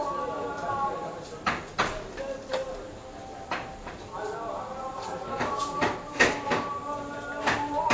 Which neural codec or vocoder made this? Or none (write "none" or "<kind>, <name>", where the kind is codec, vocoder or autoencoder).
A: none